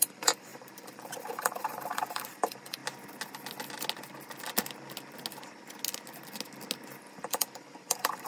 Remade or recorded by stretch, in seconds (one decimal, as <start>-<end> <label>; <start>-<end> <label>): 0.0-2.8 remade; 2.8-7.0 recorded; 7.0-8.3 remade